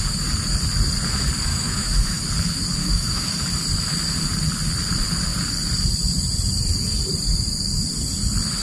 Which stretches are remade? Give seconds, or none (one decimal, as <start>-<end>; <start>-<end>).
1.5-2.2; 2.8-3.4